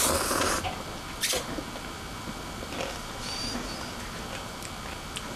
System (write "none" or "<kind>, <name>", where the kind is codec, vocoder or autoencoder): none